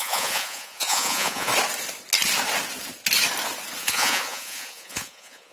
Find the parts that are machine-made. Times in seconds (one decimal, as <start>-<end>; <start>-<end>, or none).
0.0-1.5; 3.8-5.5